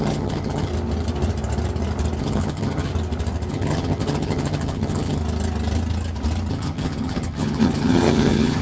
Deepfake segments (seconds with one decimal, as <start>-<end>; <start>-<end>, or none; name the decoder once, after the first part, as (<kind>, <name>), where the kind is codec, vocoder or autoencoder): 0.0-0.7 (vocoder, HiFi-GAN); 2.2-2.9; 3.5-5.2; 6.5-8.6